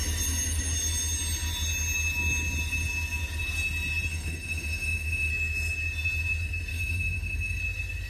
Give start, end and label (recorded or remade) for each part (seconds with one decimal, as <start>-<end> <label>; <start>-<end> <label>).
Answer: 0.0-4.1 recorded; 4.1-5.3 remade; 5.3-6.7 recorded; 6.7-7.6 remade; 7.6-8.1 recorded